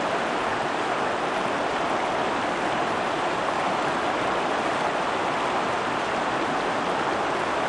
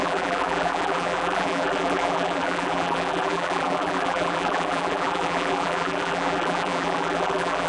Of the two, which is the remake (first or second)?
second